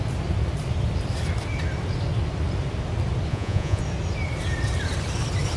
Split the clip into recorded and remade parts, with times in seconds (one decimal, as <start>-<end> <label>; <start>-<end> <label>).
0.0-3.3 recorded; 3.3-3.8 remade; 3.8-5.6 recorded